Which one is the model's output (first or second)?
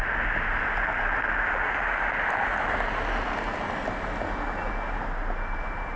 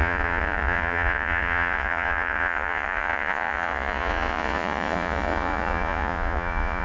second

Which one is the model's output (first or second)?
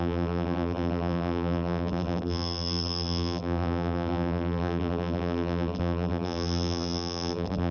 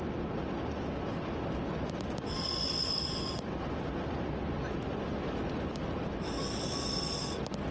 first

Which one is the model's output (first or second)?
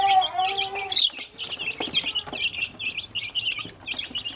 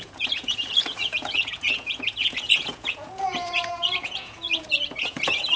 second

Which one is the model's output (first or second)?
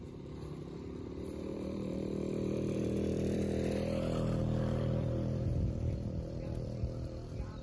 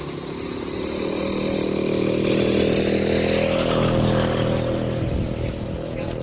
first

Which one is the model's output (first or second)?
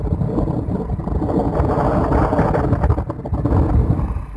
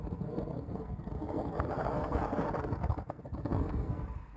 second